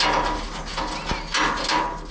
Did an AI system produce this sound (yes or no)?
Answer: no